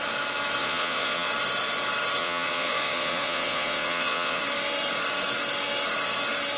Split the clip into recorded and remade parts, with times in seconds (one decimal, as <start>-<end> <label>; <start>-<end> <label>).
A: 0.0-0.6 recorded; 0.6-1.3 remade; 1.3-2.2 recorded; 2.2-4.4 remade; 4.4-6.6 recorded